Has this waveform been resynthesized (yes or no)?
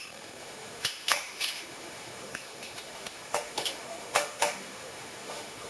yes